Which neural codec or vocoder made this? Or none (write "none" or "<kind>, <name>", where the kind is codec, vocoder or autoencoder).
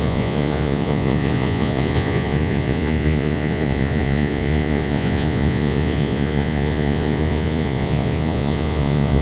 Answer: vocoder, Vocos